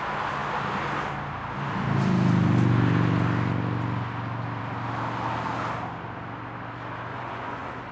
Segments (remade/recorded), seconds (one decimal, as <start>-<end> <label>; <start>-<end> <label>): 0.0-7.1 recorded; 7.1-7.9 remade